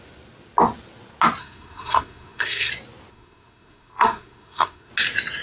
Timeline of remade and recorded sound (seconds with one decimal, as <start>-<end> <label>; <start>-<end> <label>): 0.0-1.4 recorded; 1.4-2.7 remade; 2.7-3.1 recorded; 3.1-4.9 remade; 4.9-5.4 recorded

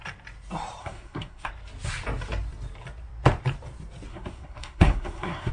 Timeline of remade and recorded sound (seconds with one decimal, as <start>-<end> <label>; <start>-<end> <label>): 0.0-0.8 recorded; 0.8-1.5 remade; 1.5-4.1 recorded; 4.1-5.5 remade

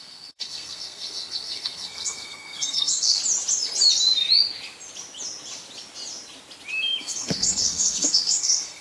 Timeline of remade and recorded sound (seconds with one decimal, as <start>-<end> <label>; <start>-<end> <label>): 0.0-3.2 remade; 3.2-7.0 recorded; 7.0-8.8 remade

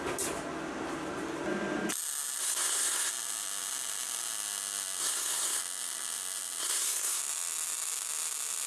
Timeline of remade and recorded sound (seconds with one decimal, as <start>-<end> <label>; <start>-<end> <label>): 0.0-2.4 recorded; 2.4-3.1 remade; 3.1-5.0 recorded; 5.0-5.6 remade; 5.6-6.6 recorded; 6.6-7.2 remade; 7.2-8.7 recorded

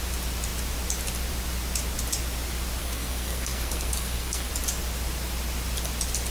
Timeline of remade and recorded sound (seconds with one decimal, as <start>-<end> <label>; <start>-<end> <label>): 0.0-2.8 recorded; 2.8-4.5 remade; 4.5-6.3 recorded